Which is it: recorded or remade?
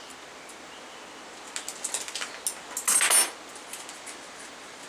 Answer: recorded